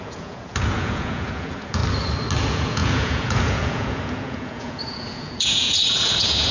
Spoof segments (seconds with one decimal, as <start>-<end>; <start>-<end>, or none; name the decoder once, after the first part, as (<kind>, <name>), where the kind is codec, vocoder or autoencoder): 0.0-1.8 (vocoder, Vocos); 2.4-6.5